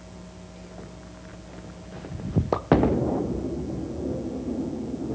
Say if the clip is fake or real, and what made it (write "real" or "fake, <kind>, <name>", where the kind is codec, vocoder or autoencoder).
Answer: real